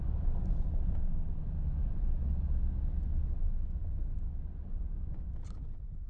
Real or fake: real